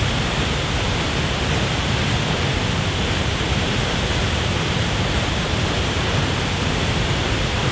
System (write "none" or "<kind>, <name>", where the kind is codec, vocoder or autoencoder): vocoder, BigVGAN v2